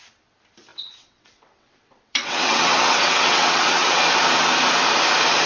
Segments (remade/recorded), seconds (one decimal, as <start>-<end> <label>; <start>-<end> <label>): 0.0-0.7 recorded; 0.7-4.0 remade; 4.0-5.5 recorded

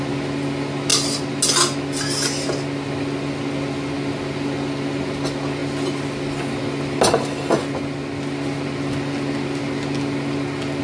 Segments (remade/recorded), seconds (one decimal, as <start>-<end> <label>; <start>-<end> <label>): 0.0-10.8 recorded